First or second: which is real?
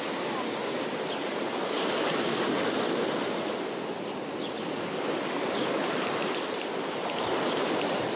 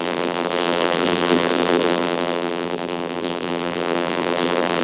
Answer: first